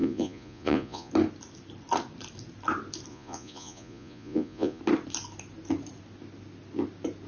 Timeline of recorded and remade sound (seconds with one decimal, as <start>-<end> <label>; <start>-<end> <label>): 0.0-1.1 remade; 1.1-3.1 recorded; 3.1-4.8 remade; 4.8-7.3 recorded